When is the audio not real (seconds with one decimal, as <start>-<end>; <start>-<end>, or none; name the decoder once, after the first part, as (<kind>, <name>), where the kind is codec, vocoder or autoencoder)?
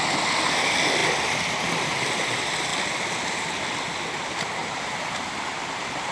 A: none